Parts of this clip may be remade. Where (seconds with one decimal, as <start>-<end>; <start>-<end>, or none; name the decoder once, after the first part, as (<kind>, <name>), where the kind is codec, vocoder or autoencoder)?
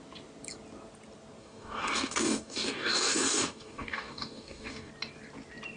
1.4-4.9 (codec, DAC)